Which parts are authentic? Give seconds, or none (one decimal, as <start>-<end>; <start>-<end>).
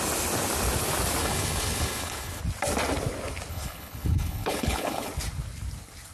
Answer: 0.0-1.2; 2.4-3.5; 5.1-6.1